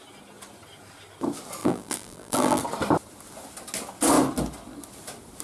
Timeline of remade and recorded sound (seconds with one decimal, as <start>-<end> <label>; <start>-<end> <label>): 0.0-1.6 recorded; 1.6-2.6 remade; 2.6-5.4 recorded